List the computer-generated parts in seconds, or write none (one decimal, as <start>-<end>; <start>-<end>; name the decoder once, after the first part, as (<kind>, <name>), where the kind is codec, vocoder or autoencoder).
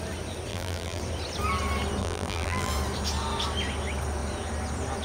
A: 0.5-1.0 (vocoder, BigVGAN v2); 2.0-2.7